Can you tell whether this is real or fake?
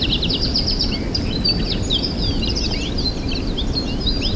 real